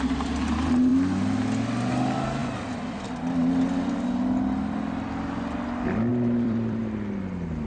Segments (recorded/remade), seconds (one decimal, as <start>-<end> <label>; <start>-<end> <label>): 0.0-2.4 recorded; 2.4-3.1 remade; 3.1-6.1 recorded; 6.1-6.8 remade; 6.8-7.7 recorded